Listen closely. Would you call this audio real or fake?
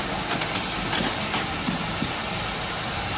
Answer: real